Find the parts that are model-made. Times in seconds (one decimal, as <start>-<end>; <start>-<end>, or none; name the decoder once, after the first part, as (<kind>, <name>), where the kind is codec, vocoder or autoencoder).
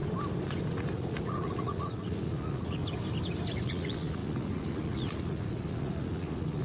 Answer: 0.7-2.8 (vocoder, Vocos); 3.5-6.6